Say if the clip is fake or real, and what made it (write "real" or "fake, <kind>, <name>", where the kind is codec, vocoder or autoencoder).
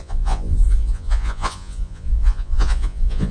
fake, vocoder, Vocos